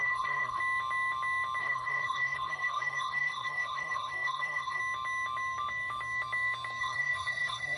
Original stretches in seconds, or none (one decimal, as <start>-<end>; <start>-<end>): 0.6-1.6; 4.8-6.8